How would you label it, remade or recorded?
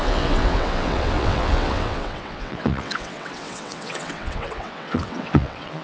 remade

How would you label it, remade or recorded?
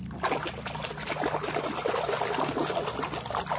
recorded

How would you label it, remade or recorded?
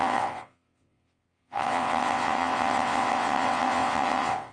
remade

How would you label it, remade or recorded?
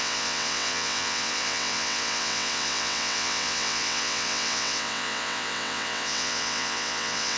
remade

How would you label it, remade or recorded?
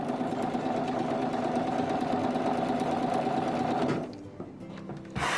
recorded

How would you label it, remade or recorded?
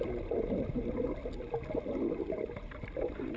recorded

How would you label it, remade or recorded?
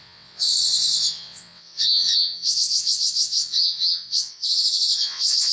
remade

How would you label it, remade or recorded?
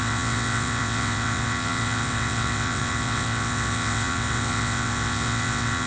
remade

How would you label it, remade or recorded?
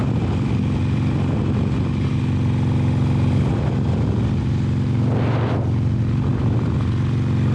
recorded